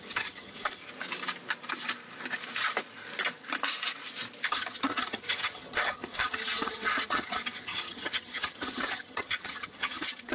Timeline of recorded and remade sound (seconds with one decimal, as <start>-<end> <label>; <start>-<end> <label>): 0.0-0.8 remade; 0.8-4.5 recorded; 4.5-10.3 remade